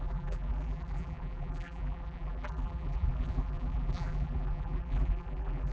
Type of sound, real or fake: fake